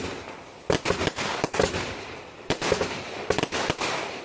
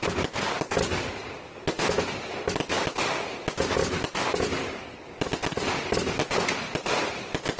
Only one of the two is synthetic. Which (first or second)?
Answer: first